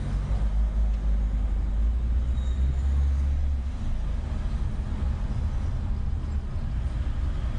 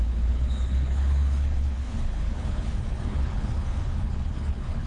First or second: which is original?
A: first